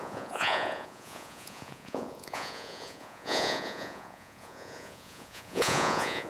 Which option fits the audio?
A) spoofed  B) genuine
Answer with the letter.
A